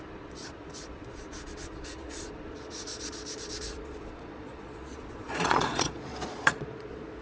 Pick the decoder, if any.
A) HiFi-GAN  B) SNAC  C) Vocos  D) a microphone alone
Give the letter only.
C